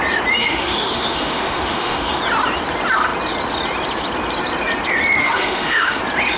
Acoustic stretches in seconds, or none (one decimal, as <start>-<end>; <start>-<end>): 0.0-0.4; 2.2-5.2; 6.0-6.4